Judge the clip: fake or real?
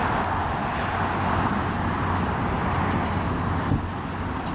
real